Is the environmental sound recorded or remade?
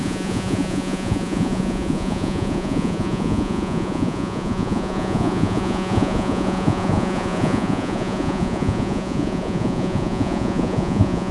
remade